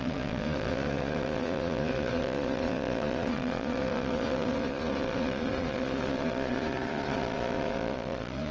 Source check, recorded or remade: remade